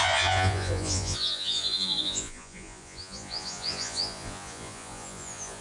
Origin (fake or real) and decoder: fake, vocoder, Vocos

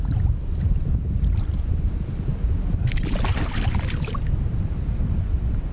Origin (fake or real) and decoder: real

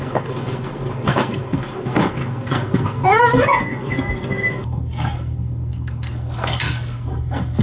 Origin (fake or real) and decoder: fake, codec, SNAC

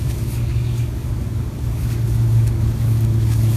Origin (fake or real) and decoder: fake, codec, DAC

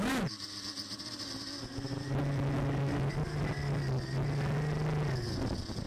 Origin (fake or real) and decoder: real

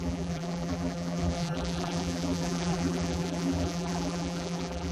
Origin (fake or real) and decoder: fake, vocoder, BigVGAN v2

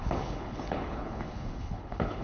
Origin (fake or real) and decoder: fake, codec, HILCodec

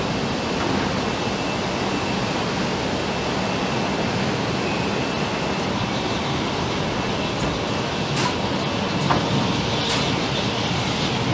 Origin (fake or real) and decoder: real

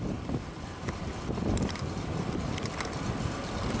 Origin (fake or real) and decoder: fake, vocoder, BigVGAN v2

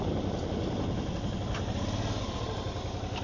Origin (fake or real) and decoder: real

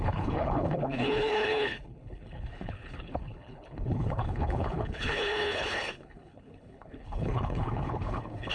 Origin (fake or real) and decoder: fake, codec, HILCodec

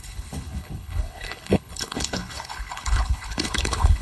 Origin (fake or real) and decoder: fake, codec, HILCodec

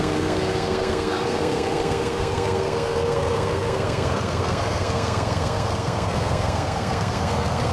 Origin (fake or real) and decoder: fake, codec, SNAC